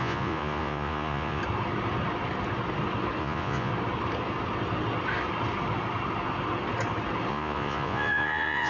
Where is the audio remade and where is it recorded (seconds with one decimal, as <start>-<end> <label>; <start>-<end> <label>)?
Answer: 0.0-1.4 remade; 1.4-3.2 recorded; 3.2-3.7 remade; 3.7-7.3 recorded; 7.3-8.7 remade